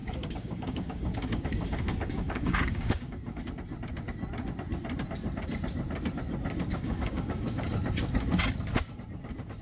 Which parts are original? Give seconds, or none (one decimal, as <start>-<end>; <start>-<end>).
3.4-6.7; 7.7-9.6